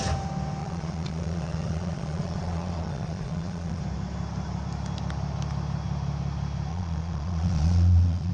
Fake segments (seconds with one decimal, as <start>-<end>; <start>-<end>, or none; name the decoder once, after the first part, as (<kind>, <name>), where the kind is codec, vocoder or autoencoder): 0.6-3.8 (vocoder, Vocos); 6.7-8.3